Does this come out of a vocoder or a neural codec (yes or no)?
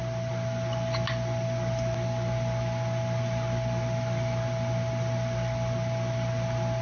no